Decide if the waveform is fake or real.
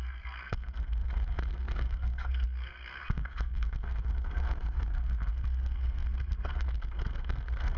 fake